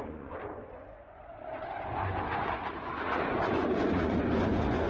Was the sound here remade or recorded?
remade